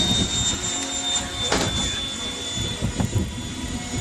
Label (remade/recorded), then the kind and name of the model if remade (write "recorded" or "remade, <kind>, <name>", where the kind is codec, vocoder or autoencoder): recorded